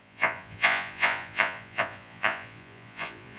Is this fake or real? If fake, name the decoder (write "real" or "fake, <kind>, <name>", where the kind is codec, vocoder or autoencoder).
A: fake, vocoder, Vocos